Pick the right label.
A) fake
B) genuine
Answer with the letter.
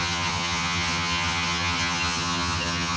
A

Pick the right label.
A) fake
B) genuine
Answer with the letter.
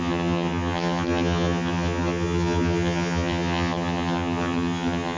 A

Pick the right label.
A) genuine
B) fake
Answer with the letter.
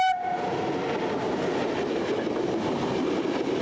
A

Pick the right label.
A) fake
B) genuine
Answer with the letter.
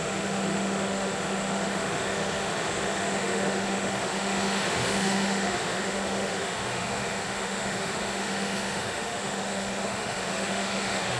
A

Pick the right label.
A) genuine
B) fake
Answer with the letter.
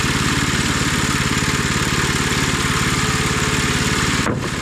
A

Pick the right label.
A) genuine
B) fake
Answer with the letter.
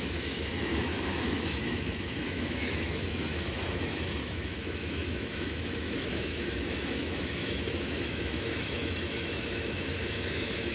B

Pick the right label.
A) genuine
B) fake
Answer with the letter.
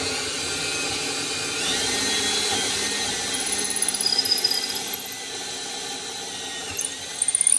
A